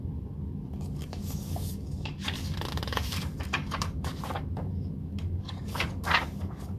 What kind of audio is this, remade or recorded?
remade